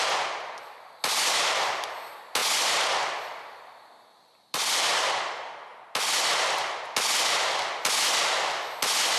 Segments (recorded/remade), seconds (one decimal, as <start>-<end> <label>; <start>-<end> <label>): 0.0-9.2 recorded